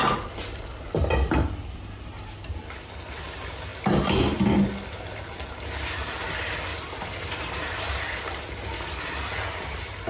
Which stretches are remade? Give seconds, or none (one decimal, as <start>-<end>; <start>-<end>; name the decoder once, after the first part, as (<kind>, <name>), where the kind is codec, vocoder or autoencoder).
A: 6.7-7.5 (vocoder, BigVGAN v2)